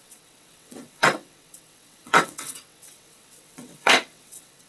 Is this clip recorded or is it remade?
remade